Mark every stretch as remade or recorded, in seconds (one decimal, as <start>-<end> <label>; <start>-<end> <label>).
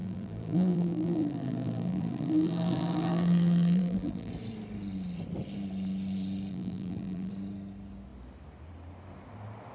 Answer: 0.0-4.3 remade; 4.3-6.5 recorded; 6.5-7.3 remade; 7.3-9.7 recorded